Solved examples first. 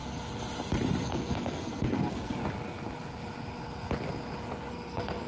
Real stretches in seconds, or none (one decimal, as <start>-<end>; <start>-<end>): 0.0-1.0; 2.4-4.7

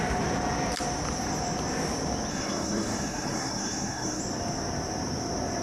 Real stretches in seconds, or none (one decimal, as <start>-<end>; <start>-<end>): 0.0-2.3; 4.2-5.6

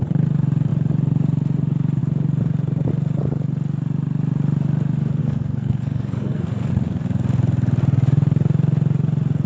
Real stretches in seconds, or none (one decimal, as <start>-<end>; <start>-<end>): 0.0-5.2; 6.7-9.5